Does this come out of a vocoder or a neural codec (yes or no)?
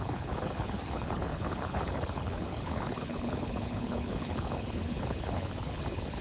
yes